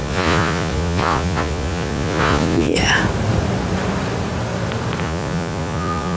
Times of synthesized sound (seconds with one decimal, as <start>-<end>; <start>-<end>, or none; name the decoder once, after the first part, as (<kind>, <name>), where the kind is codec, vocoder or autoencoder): 0.0-2.7 (vocoder, Vocos); 5.0-6.2